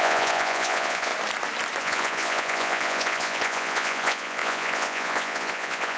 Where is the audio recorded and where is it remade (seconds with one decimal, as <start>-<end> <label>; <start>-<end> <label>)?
0.0-1.1 remade; 1.1-1.8 recorded; 1.8-6.0 remade